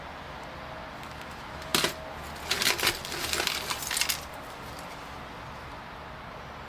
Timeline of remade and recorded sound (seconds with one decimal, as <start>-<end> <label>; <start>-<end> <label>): 0.0-6.7 recorded